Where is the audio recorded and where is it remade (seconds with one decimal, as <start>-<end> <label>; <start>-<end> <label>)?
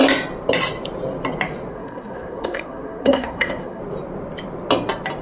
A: 0.0-1.7 recorded; 1.7-3.8 remade; 3.8-5.2 recorded